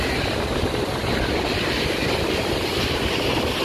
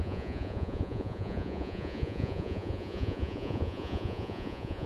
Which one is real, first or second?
first